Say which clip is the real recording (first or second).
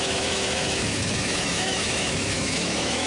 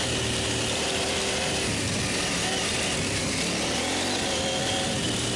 second